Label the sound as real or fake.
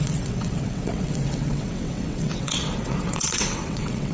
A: fake